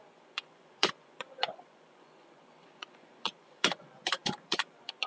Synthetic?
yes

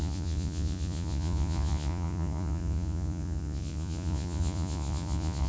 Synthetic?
yes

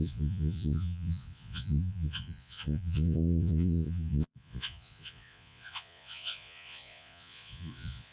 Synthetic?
yes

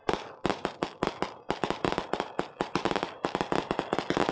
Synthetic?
no